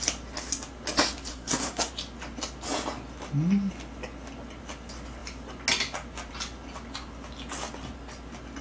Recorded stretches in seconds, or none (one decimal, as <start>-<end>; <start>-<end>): 0.0-1.3; 1.9-8.6